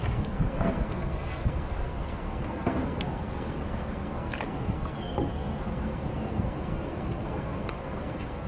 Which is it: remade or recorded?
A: remade